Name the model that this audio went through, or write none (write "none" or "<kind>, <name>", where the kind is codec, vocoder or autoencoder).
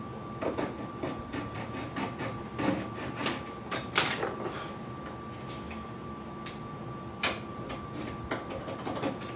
none